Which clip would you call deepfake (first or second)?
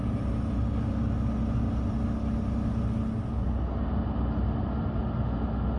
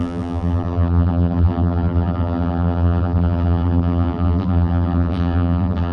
second